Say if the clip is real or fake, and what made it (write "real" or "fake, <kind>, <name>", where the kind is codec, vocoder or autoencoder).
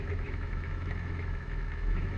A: fake, autoencoder, DAC-VAE